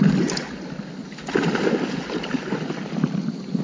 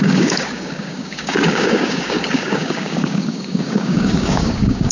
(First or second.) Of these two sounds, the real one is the first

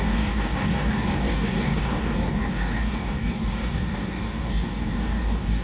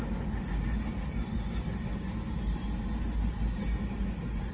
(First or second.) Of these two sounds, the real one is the second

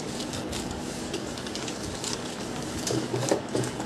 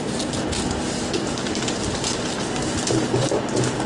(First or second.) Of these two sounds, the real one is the second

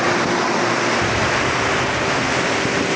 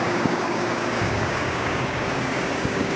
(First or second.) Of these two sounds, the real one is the first